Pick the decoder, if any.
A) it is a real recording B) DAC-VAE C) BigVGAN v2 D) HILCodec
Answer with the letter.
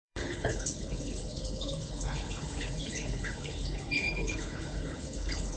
D